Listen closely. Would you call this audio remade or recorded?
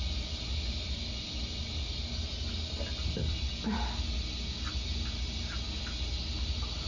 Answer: recorded